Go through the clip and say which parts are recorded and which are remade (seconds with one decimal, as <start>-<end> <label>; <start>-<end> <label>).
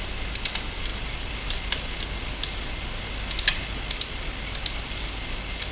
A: 0.0-5.7 recorded